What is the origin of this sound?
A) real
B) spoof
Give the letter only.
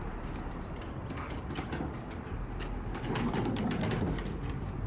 A